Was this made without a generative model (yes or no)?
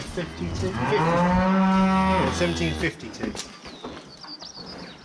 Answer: yes